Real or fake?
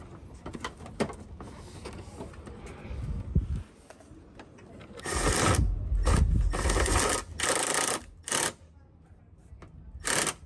real